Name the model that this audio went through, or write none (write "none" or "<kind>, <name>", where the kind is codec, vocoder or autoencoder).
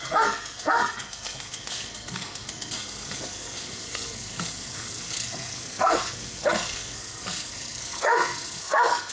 codec, SNAC